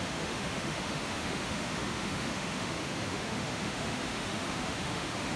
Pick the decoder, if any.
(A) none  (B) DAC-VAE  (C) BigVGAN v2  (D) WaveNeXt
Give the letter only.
B